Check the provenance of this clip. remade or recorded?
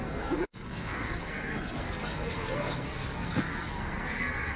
remade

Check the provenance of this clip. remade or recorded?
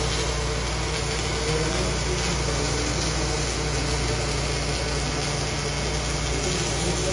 recorded